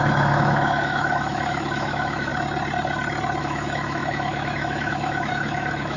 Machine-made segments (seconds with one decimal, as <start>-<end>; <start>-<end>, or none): 0.0-2.3; 3.4-6.0